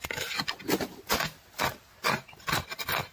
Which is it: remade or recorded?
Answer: recorded